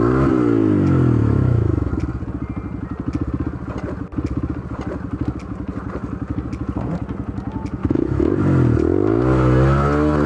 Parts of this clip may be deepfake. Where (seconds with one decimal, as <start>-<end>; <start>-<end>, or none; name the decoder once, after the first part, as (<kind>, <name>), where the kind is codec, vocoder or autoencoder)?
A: 1.2-1.9 (autoencoder, DAC-VAE); 7.8-8.3